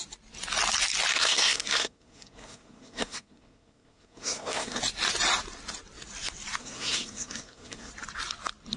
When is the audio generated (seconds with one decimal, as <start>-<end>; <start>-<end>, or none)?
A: 1.1-4.8; 6.6-7.9

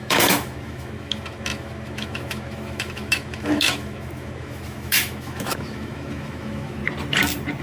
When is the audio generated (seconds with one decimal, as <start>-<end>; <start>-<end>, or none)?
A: 0.0-6.8

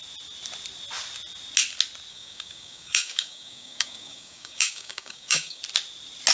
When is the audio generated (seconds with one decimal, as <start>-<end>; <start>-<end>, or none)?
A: 2.1-5.6

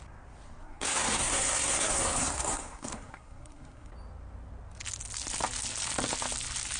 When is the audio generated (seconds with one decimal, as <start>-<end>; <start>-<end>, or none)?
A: 0.6-3.9

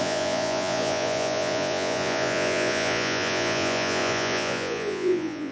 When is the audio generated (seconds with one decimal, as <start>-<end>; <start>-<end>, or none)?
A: 0.0-5.5

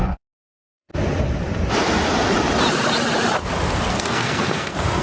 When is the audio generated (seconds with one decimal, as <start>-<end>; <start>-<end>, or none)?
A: 0.0-0.9; 3.9-5.0

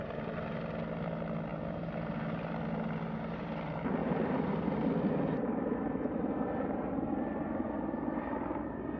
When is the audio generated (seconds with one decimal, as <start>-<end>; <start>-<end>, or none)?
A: 1.5-2.5; 4.0-6.3

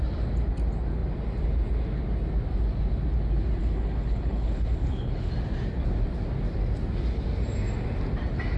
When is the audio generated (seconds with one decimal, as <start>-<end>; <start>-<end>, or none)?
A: 3.6-5.3